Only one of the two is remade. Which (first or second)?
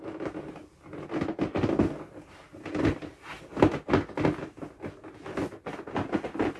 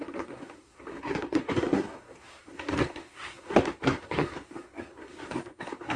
second